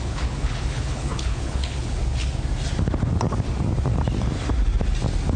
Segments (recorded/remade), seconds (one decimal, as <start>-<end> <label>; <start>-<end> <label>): 0.0-2.0 remade; 2.0-5.4 recorded